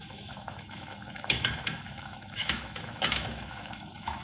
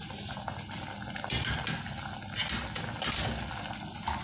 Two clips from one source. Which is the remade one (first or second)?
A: first